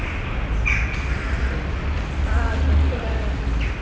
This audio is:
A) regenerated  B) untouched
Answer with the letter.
B